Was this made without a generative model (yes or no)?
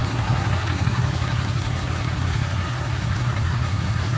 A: no